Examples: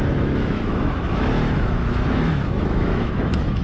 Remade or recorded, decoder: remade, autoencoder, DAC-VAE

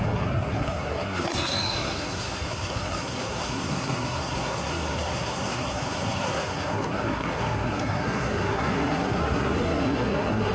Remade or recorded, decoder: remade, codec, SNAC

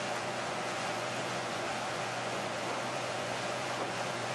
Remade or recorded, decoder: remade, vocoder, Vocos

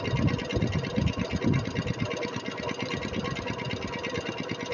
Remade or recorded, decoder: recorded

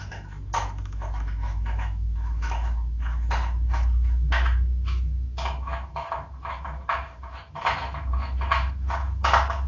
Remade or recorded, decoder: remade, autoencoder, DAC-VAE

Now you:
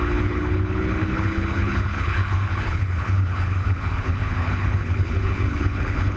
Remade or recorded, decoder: remade, codec, HILCodec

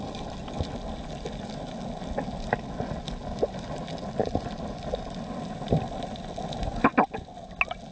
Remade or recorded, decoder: recorded